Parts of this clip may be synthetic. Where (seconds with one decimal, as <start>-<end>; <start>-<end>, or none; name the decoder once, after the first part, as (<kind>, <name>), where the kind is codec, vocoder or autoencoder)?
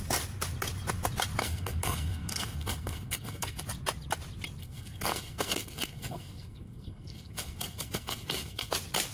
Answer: 1.4-3.6 (codec, SNAC); 4.6-8.7